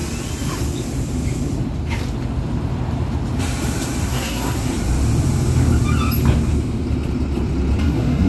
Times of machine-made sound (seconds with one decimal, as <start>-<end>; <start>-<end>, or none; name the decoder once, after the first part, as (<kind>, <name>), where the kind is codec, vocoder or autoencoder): 4.1-4.7 (codec, SNAC); 7.8-8.3